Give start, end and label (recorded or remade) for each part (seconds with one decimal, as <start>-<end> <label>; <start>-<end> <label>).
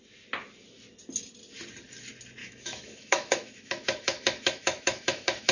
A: 0.0-2.4 recorded; 2.4-5.5 remade